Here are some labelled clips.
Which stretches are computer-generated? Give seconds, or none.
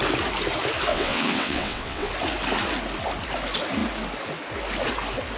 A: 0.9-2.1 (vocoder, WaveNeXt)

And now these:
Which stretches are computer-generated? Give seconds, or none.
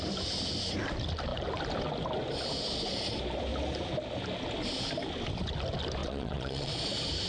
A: 6.0-6.7 (vocoder, WaveNeXt)